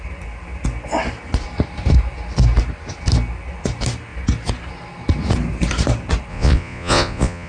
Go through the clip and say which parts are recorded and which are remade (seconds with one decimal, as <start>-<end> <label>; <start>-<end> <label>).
0.0-6.3 recorded; 6.3-7.5 remade